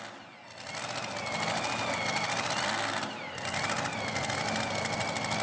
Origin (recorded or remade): recorded